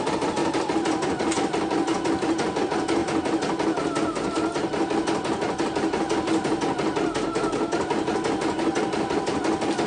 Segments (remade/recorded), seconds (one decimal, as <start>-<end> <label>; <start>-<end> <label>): 0.0-9.9 recorded